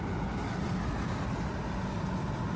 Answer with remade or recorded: recorded